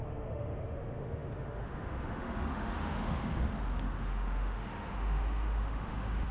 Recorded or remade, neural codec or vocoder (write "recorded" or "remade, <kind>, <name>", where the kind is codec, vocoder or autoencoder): remade, autoencoder, DAC-VAE